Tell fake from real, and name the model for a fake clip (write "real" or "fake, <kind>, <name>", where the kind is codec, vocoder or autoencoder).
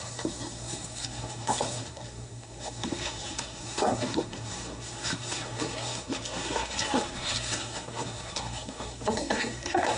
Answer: fake, codec, SNAC